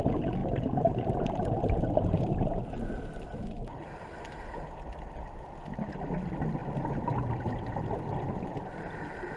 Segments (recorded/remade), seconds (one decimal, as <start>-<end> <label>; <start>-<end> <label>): 0.0-0.4 recorded; 0.4-2.6 remade; 2.6-9.4 recorded